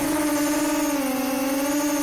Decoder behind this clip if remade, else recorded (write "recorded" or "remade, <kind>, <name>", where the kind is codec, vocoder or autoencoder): recorded